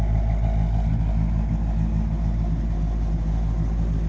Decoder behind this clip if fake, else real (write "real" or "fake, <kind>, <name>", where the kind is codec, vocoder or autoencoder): real